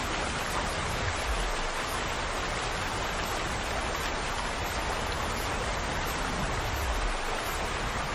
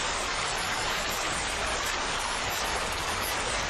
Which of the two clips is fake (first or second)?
second